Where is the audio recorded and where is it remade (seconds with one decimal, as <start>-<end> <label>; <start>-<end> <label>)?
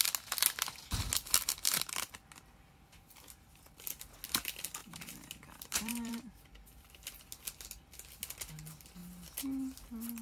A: 0.0-4.8 recorded; 4.8-6.5 remade; 6.5-10.2 recorded